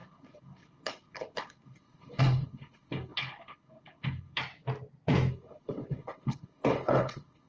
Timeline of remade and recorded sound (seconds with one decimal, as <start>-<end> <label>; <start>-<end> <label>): 0.0-4.4 remade; 4.4-5.3 recorded; 5.3-7.5 remade